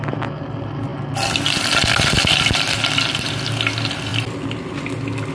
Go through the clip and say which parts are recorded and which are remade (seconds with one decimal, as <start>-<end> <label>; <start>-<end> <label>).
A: 0.0-5.3 recorded